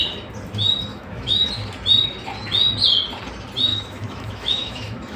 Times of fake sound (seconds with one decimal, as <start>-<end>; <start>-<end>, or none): 0.9-1.5; 3.7-5.2